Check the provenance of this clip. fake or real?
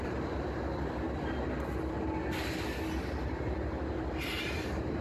real